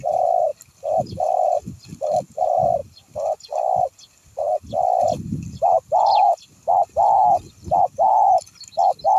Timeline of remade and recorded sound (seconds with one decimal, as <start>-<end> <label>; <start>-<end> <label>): 0.0-2.8 remade; 2.8-7.5 recorded; 7.5-9.2 remade